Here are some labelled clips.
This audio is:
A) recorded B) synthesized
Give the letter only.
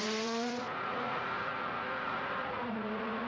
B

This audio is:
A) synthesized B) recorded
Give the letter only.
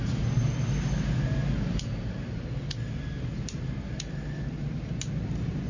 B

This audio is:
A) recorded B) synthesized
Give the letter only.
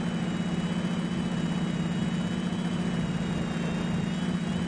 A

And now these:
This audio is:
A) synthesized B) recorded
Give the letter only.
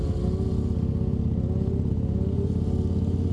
B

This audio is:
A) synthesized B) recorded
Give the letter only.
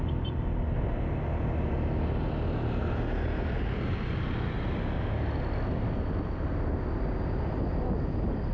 B